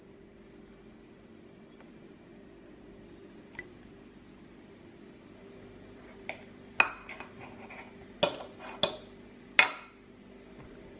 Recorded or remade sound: recorded